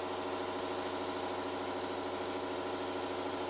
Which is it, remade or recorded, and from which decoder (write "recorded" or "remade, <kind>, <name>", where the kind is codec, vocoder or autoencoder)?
recorded